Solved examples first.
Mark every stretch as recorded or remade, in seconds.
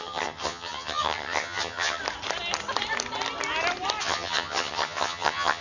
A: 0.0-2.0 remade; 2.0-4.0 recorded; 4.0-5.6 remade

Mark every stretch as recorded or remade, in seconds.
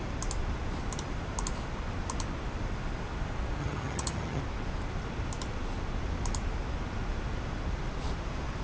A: 0.0-3.6 recorded; 3.6-4.4 remade; 4.4-8.6 recorded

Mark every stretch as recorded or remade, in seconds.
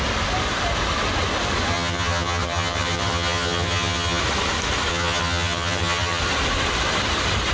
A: 0.0-1.7 recorded; 1.7-4.2 remade; 4.2-4.9 recorded; 4.9-6.2 remade; 6.2-7.5 recorded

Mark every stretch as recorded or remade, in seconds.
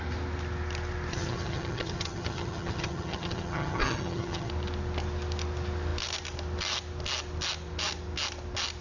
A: 0.0-1.1 recorded; 1.1-4.5 remade; 4.5-8.8 recorded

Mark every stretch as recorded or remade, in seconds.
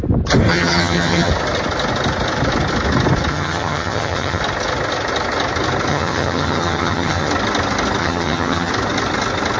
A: 0.0-0.5 recorded; 0.5-1.3 remade; 1.3-3.3 recorded; 3.3-4.4 remade; 4.4-5.9 recorded; 5.9-7.3 remade; 7.3-8.0 recorded; 8.0-8.7 remade; 8.7-9.6 recorded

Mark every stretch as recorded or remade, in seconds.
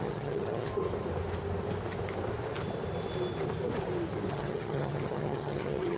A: 0.0-0.7 remade; 0.7-4.3 recorded; 4.3-6.0 remade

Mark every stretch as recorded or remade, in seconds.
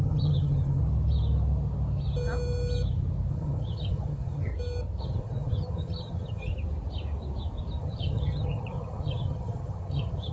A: 0.0-0.8 remade; 0.8-3.3 recorded; 3.3-4.5 remade; 4.5-5.0 recorded; 5.0-6.5 remade; 6.5-7.8 recorded; 7.8-10.3 remade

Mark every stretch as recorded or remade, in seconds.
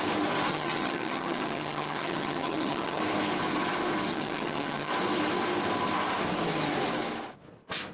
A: 0.0-0.5 recorded; 0.5-3.0 remade; 3.0-4.1 recorded; 4.1-4.9 remade; 4.9-7.9 recorded